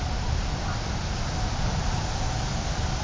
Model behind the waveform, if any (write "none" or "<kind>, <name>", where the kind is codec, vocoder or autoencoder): none